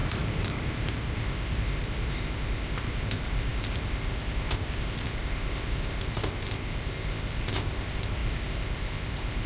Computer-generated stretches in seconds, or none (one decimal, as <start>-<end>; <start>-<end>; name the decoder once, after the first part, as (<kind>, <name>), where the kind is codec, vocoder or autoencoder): 0.0-9.5 (codec, ZipCodec)